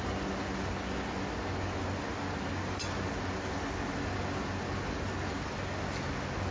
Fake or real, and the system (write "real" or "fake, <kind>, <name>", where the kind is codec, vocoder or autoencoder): real